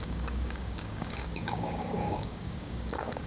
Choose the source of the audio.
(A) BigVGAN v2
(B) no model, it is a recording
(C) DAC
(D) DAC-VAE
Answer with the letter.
C